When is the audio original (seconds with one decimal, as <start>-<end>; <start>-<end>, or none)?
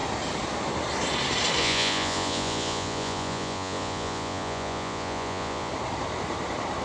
0.0-1.6; 5.7-6.8